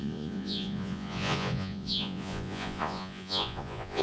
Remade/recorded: remade